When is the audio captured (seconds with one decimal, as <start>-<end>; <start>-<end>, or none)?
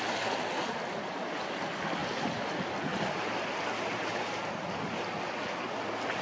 0.0-2.9; 4.9-6.2